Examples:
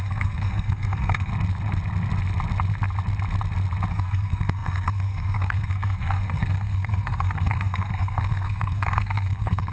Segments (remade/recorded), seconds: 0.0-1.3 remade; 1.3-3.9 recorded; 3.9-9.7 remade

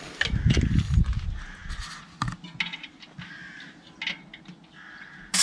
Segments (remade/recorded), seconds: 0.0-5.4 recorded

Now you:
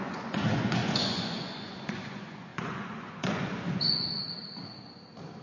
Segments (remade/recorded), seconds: 0.0-4.2 remade; 4.2-5.4 recorded

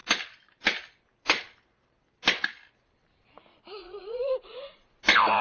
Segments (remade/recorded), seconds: 0.0-3.8 recorded; 3.8-5.0 remade; 5.0-5.4 recorded